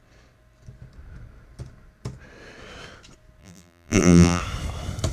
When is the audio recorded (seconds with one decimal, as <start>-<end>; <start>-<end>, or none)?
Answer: 0.0-3.4; 4.4-5.1